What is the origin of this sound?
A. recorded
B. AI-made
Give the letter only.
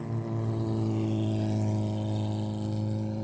A